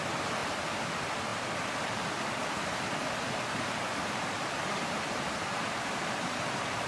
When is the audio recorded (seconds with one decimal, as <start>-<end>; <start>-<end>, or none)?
0.0-6.9